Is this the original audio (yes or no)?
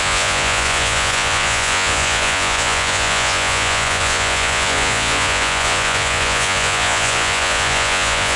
no